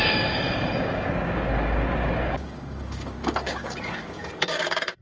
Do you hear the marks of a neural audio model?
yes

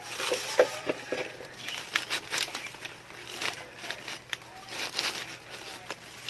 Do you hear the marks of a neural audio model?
no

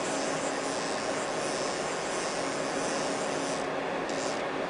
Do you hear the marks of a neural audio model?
no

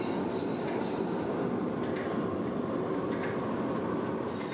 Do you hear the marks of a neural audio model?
no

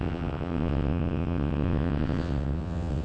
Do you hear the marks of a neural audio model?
yes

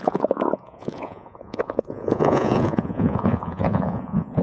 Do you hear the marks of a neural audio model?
yes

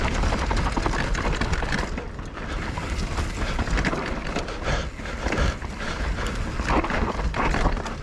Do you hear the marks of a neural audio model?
no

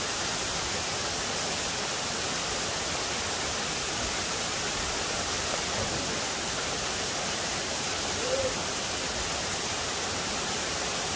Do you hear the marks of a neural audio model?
no